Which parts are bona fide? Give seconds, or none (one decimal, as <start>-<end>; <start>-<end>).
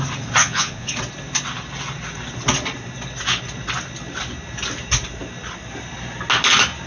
0.0-0.4; 0.9-6.9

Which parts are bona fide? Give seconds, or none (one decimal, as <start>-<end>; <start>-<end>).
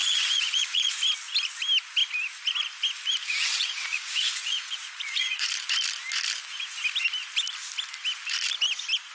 1.0-3.2; 5.5-9.1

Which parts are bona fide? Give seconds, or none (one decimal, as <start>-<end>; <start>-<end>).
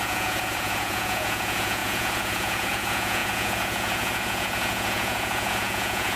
none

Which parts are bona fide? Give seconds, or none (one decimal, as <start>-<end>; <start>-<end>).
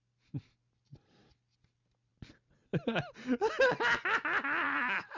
0.0-5.2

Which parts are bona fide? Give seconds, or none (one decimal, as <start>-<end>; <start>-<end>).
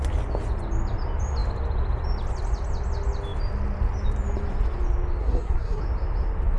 0.0-5.2; 5.8-6.6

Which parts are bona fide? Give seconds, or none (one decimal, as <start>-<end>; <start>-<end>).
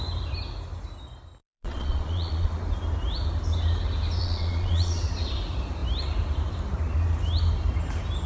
0.0-1.4; 2.5-4.2; 5.0-8.3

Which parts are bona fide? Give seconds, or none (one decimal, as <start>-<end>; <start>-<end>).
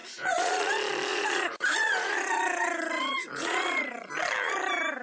0.7-1.1; 4.1-5.0